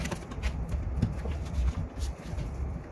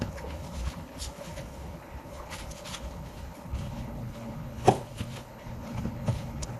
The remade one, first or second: second